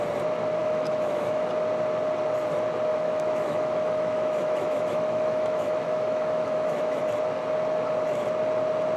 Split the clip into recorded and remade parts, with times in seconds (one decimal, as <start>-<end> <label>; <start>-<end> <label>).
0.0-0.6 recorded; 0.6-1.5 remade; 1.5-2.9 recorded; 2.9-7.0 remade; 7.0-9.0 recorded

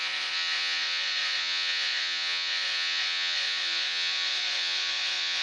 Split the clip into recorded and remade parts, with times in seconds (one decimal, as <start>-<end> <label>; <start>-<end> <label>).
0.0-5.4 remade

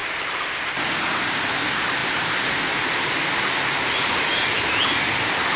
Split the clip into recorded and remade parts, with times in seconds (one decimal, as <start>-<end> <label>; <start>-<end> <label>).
0.0-0.6 remade; 0.6-2.0 recorded; 2.0-2.9 remade; 2.9-5.6 recorded

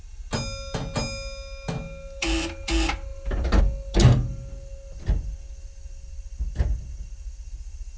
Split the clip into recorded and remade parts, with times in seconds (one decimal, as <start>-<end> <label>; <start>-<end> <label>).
0.0-8.0 recorded

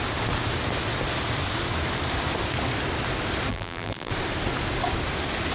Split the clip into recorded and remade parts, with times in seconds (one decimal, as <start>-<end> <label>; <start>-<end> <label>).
0.0-3.5 recorded; 3.5-4.1 remade; 4.1-5.5 recorded

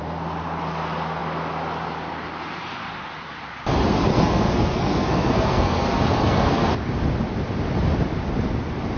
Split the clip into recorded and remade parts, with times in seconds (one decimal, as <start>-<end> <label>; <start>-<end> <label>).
0.0-4.1 recorded; 4.1-6.7 remade; 6.7-9.0 recorded